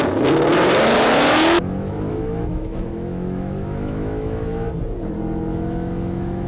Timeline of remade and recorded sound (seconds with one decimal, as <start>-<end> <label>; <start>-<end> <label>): 0.0-2.1 recorded; 2.1-4.7 remade; 4.7-5.5 recorded; 5.5-6.5 remade